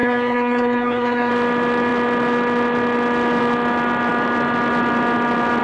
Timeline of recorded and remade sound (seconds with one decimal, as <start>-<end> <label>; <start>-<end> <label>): 0.0-1.3 remade; 1.3-5.6 recorded